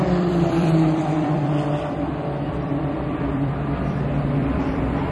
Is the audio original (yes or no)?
no